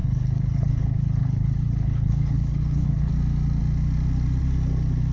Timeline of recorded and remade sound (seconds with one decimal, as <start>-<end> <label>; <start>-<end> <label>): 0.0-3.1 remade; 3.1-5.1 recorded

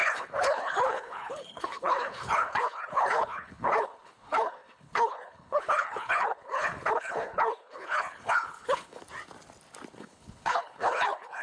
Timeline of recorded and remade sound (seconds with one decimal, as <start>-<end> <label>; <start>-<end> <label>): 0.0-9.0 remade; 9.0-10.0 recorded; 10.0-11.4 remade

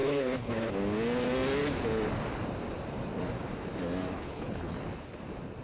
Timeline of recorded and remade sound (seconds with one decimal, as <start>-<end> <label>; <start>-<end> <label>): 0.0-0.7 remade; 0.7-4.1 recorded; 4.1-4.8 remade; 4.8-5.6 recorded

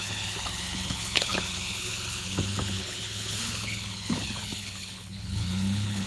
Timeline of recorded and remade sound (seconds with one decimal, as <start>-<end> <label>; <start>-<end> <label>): 0.0-6.1 remade

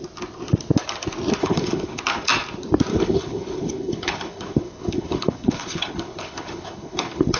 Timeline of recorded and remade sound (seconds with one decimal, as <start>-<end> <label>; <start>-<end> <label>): 0.0-1.4 recorded; 1.4-2.0 remade; 2.0-2.9 recorded; 2.9-7.4 remade